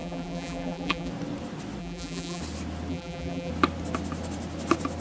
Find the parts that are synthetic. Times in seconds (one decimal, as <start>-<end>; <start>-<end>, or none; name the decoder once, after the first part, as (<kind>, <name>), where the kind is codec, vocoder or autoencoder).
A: 0.0-1.1 (vocoder, BigVGAN v2); 1.8-2.4; 2.9-3.5